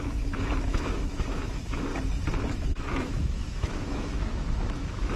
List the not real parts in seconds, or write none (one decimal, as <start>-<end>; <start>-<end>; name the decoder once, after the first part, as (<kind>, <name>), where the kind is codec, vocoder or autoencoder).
0.0-1.9 (autoencoder, DAC-VAE); 2.5-5.2